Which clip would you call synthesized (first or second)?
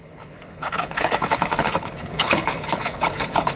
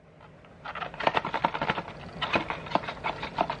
first